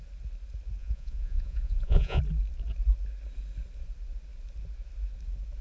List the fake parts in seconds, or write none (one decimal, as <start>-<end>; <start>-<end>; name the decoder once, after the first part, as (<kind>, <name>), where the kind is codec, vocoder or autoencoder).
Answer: 0.8-2.2 (vocoder, Vocos)